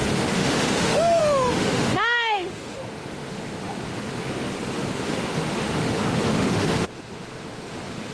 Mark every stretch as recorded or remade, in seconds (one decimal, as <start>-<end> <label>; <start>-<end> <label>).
0.0-8.1 remade

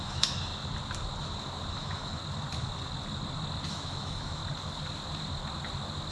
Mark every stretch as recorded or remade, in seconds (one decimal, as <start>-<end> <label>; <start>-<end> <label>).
0.0-0.5 remade; 0.5-1.7 recorded; 1.7-2.2 remade; 2.2-3.7 recorded; 3.7-4.4 remade; 4.4-6.1 recorded

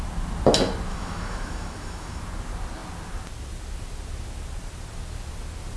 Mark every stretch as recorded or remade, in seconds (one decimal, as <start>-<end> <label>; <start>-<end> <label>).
0.0-0.9 recorded; 0.9-2.2 remade; 2.2-5.8 recorded

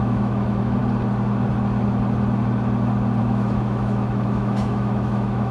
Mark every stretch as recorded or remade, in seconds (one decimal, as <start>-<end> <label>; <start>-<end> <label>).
0.0-0.8 remade; 0.8-3.2 recorded; 3.2-5.5 remade

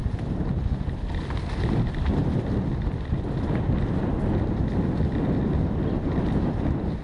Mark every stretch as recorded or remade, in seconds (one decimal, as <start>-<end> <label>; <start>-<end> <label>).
0.0-7.0 recorded

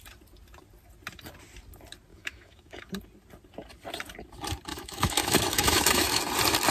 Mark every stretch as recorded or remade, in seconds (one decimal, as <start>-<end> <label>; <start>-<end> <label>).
0.0-2.1 recorded; 2.1-2.9 remade; 2.9-4.7 recorded; 4.7-6.2 remade; 6.2-6.7 recorded

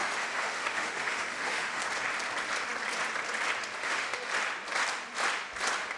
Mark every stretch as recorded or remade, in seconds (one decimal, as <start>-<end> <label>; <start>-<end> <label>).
0.0-1.8 remade; 1.8-3.8 recorded; 3.8-4.3 remade; 4.3-6.0 recorded